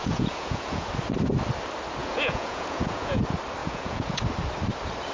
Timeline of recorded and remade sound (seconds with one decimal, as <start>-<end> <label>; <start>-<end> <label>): 0.0-0.9 remade; 0.9-2.0 recorded; 2.0-3.2 remade; 3.2-3.6 recorded; 3.6-4.2 remade; 4.2-5.1 recorded